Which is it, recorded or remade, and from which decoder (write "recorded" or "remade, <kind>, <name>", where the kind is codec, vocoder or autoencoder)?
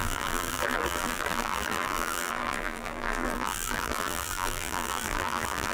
remade, vocoder, BigVGAN v2